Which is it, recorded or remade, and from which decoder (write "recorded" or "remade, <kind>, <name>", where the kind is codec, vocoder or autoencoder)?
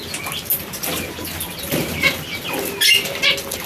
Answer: recorded